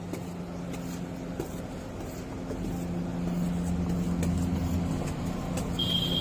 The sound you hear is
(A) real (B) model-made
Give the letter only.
A